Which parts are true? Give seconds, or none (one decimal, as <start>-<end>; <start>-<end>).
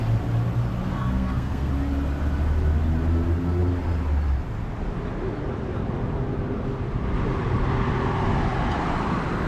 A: 0.0-0.9; 1.7-9.5